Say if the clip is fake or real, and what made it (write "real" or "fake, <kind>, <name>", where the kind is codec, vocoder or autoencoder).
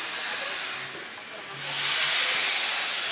real